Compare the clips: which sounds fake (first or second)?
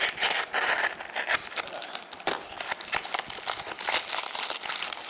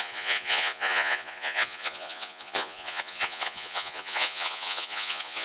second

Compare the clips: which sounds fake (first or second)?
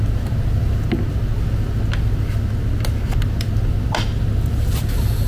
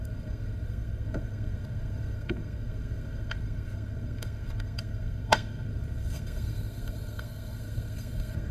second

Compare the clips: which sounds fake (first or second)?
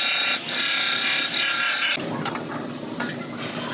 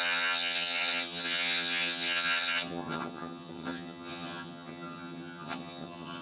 second